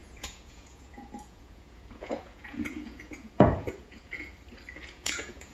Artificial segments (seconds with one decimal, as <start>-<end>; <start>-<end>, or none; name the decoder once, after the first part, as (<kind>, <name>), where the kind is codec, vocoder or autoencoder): 0.0-4.3 (vocoder, Vocos); 4.8-5.5